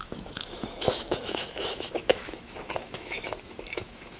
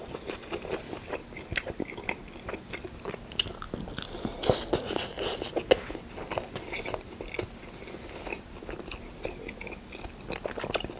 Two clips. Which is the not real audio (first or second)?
first